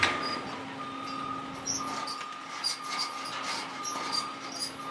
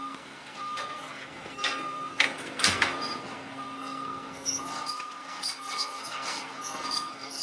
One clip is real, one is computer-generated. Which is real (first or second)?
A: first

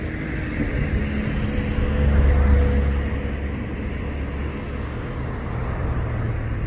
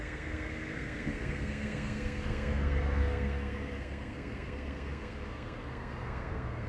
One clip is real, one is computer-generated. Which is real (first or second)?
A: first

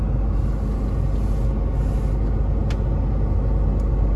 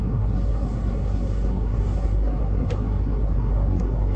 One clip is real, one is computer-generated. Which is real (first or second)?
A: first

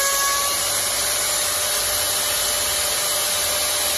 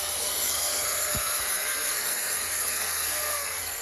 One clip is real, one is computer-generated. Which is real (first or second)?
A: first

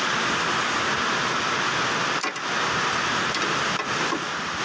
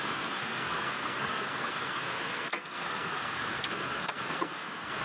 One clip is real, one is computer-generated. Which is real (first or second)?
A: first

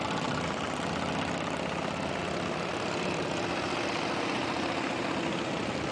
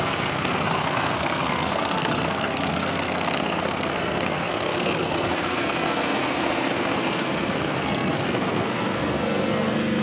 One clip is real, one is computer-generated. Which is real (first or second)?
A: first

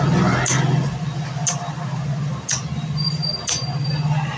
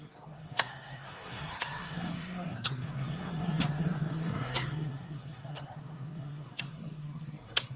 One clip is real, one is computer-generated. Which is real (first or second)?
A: first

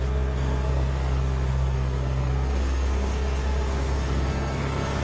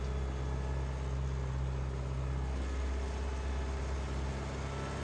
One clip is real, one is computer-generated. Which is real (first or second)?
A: second